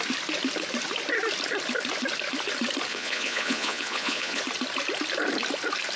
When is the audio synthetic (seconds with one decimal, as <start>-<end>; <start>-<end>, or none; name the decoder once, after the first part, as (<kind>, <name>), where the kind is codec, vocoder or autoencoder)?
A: 2.9-4.4 (vocoder, Vocos)